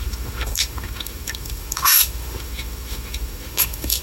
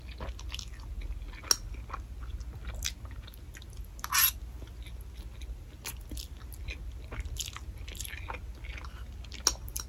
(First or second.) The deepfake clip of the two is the first